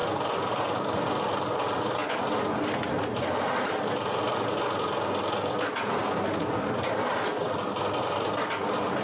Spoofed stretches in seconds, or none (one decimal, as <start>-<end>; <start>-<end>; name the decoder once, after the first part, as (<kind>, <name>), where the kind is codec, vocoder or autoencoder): none